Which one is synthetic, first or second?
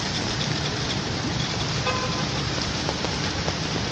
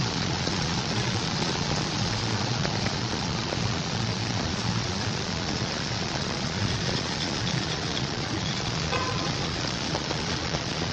second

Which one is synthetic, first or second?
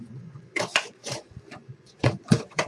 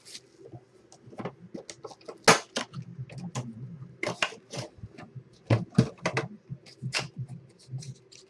first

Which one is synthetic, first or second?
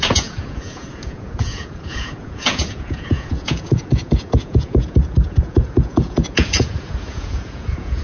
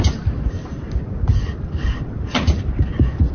first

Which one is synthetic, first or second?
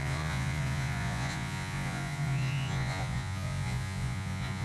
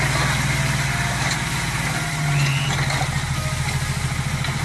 first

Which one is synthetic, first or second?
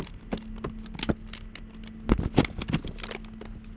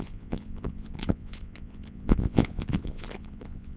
second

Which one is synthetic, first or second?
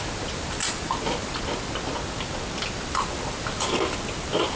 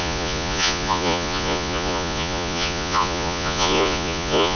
second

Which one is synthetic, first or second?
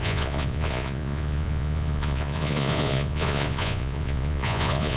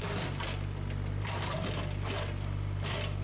first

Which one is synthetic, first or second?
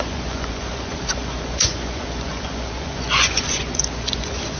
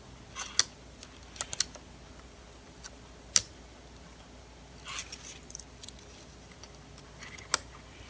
first